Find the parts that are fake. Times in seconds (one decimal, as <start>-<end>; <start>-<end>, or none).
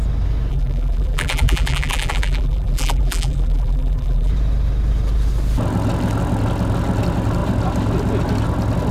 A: 0.5-4.3